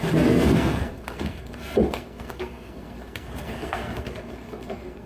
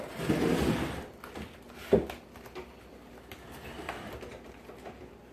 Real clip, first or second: second